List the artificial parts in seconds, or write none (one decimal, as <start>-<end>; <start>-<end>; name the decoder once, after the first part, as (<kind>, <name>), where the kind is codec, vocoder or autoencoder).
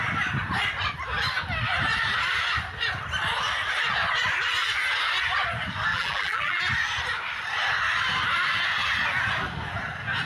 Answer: 5.9-6.6 (vocoder, BigVGAN v2)